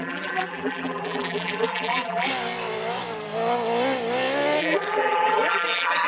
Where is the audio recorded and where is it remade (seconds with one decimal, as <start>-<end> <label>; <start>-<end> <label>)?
0.0-2.3 remade; 2.3-4.6 recorded; 4.6-6.1 remade